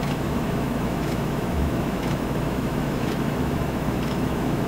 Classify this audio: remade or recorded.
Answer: remade